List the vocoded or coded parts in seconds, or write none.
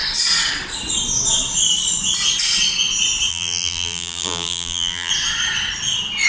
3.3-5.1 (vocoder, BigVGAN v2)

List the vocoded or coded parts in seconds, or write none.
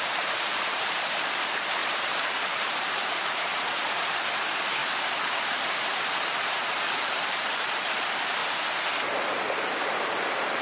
0.0-4.8 (vocoder, BigVGAN v2); 5.5-8.4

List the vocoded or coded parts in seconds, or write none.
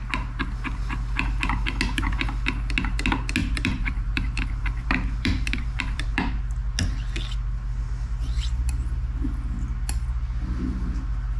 3.4-6.4 (vocoder, BigVGAN v2)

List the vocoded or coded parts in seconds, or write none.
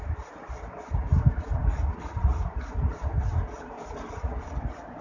none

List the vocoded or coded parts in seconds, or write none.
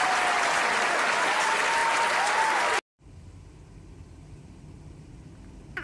none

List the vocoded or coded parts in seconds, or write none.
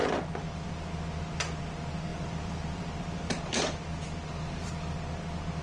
0.0-0.7 (vocoder, BigVGAN v2); 2.1-4.7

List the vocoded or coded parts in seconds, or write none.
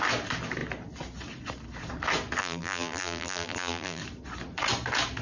2.4-4.0 (vocoder, BigVGAN v2)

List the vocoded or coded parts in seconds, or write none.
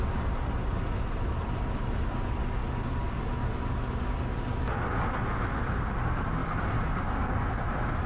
2.6-3.4 (vocoder, BigVGAN v2); 6.4-7.5